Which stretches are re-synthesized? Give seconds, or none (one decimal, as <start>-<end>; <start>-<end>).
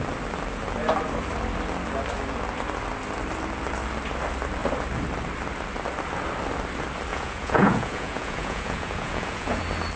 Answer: 7.1-9.6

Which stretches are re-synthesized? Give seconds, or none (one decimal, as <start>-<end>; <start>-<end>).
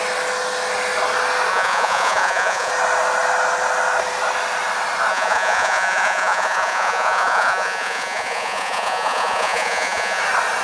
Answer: 1.5-2.7; 5.1-10.2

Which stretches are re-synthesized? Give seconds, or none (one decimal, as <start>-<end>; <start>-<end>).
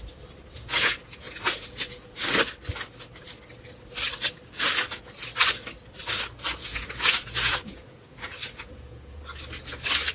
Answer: 0.5-2.2; 6.6-9.2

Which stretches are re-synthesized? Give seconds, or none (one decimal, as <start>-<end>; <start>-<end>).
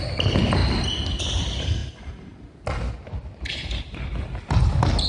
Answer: none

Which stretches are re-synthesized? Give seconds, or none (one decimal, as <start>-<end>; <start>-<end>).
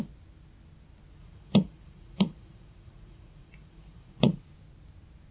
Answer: 1.2-4.4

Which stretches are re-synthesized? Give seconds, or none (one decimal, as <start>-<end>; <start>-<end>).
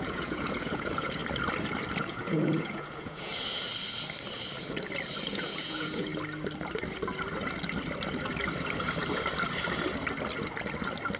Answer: 0.0-1.2; 2.0-3.3; 5.3-6.1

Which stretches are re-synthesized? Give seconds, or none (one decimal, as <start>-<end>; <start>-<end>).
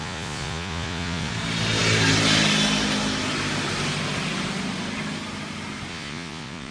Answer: 0.0-1.3; 5.9-6.7